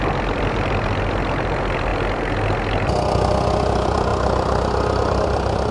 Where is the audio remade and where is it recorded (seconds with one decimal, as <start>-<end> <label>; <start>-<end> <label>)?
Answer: 0.0-1.9 remade; 1.9-3.6 recorded; 3.6-4.1 remade; 4.1-5.2 recorded; 5.2-5.7 remade